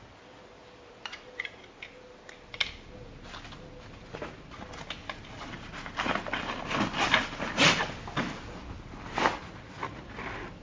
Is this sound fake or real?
real